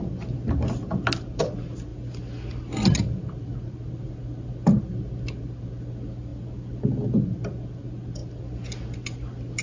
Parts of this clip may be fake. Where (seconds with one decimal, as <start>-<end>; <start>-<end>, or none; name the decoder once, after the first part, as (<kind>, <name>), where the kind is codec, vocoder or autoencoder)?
none